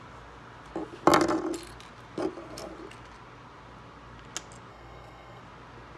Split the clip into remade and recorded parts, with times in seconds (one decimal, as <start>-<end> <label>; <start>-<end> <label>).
0.0-4.7 recorded; 4.7-5.4 remade; 5.4-6.0 recorded